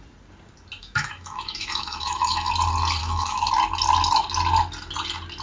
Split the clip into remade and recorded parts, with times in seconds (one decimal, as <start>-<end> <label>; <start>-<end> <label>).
0.0-0.8 recorded; 0.8-2.5 remade; 2.5-3.0 recorded; 3.0-3.5 remade; 3.5-5.4 recorded